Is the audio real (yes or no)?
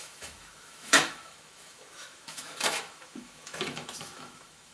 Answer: no